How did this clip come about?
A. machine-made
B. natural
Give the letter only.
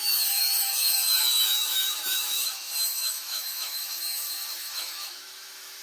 A